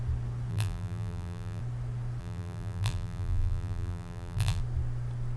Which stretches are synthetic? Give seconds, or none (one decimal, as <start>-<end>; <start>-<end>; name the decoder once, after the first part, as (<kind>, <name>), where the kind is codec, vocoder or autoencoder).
0.5-1.6 (vocoder, BigVGAN v2); 2.2-4.6